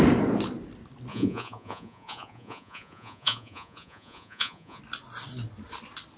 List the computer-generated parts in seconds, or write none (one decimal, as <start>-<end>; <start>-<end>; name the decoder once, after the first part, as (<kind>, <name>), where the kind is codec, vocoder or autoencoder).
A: 1.1-4.8 (vocoder, Vocos)